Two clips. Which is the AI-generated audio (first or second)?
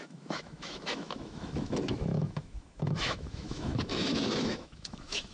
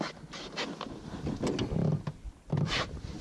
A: first